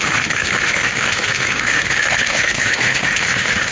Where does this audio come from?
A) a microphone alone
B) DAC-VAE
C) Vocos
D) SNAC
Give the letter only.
B